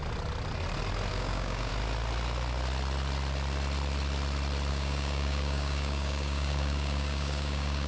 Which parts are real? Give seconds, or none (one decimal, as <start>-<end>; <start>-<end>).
0.0-1.1; 1.7-4.7